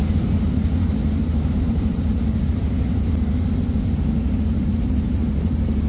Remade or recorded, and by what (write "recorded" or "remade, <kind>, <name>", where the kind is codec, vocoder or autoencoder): remade, vocoder, BigVGAN v2